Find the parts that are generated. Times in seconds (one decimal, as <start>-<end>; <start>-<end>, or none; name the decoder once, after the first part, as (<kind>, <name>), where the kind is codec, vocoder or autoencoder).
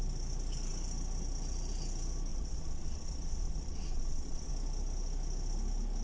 2.3-4.5 (vocoder, Vocos)